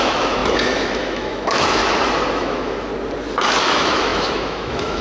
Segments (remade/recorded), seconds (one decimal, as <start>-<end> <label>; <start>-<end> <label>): 0.0-1.8 remade; 1.8-2.3 recorded; 2.3-2.9 remade; 2.9-3.6 recorded; 3.6-5.0 remade